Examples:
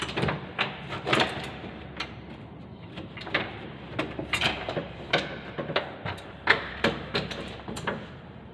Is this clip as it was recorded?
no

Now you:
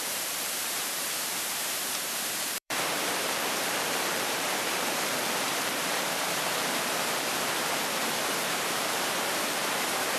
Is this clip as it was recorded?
no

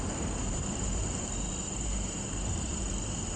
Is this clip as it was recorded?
no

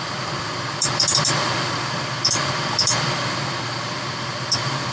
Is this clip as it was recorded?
no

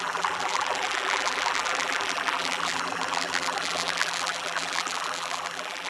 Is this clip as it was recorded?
no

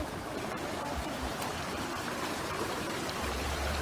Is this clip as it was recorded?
no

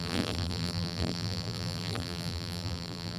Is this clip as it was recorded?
no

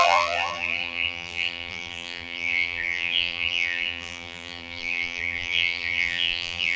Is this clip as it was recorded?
no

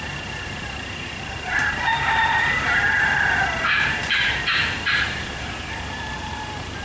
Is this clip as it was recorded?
no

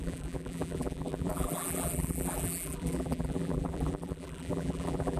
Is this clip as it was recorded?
no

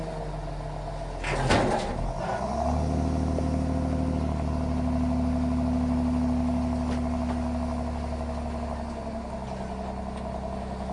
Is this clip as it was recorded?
yes